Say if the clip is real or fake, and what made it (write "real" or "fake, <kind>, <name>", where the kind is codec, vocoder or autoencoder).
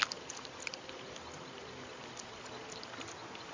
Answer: real